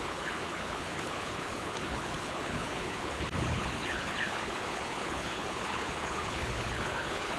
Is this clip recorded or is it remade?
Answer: remade